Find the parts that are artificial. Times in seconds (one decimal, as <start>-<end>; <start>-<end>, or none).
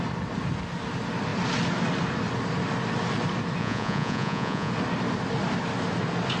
3.6-4.7